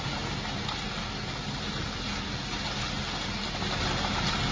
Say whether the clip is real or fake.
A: real